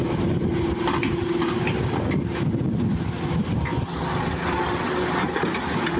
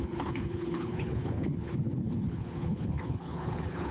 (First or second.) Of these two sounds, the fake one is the second